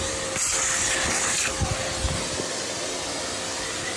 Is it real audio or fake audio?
real